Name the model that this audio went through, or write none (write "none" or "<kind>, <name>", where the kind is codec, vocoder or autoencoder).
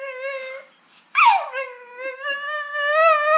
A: codec, DAC